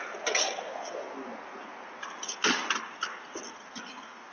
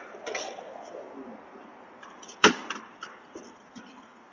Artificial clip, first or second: second